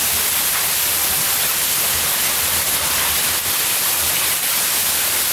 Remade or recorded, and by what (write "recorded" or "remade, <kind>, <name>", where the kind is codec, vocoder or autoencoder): recorded